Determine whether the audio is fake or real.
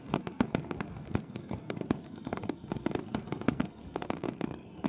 fake